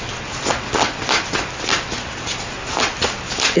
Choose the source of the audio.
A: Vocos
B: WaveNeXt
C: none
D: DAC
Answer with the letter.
C